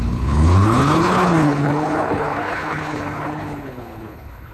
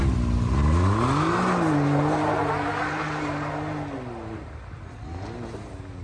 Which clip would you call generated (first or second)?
first